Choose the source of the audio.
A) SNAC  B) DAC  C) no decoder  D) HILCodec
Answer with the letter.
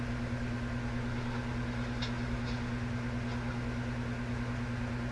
C